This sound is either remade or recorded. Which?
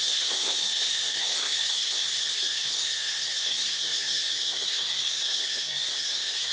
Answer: remade